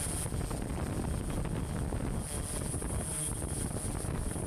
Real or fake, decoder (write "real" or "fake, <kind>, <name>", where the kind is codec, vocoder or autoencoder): real